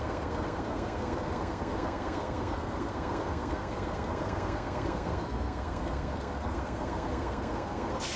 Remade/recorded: remade